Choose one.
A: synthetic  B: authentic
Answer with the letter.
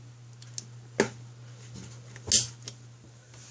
B